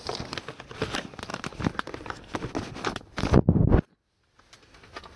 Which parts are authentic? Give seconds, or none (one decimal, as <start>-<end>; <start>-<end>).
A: 0.0-5.2